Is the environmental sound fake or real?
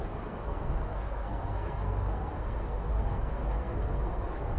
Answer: fake